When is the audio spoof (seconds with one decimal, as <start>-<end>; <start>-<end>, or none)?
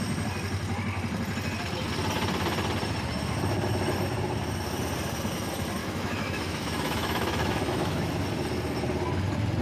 5.8-8.1